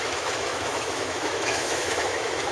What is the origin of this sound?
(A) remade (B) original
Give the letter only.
A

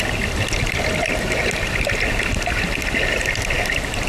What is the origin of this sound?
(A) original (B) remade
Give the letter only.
A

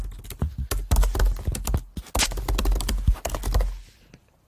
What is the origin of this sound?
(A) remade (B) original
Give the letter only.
B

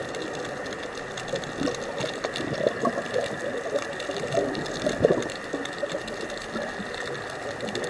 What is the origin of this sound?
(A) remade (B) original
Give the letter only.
B